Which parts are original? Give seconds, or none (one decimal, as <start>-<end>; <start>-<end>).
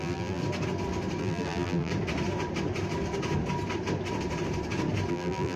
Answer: 0.4-1.2; 1.9-5.1